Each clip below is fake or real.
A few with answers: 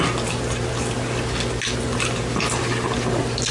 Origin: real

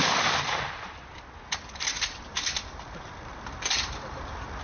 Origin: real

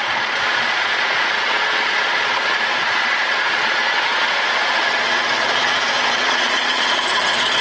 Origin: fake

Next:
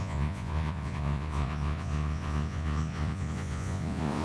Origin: fake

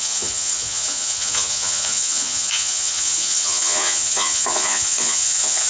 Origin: fake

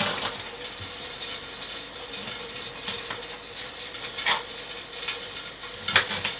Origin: real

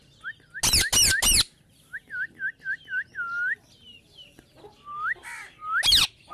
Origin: real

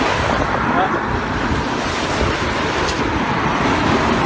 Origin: real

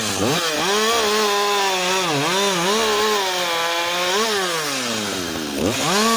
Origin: real